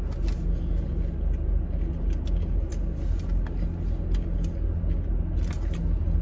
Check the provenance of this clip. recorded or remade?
recorded